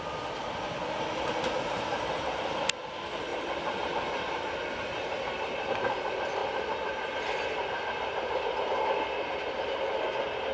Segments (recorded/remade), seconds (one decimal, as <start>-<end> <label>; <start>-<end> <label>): 0.0-1.9 recorded; 1.9-2.6 remade; 2.6-3.3 recorded; 3.3-3.9 remade; 3.9-10.5 recorded